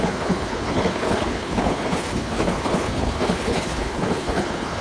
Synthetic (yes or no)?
yes